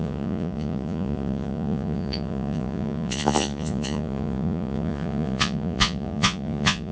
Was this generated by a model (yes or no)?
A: yes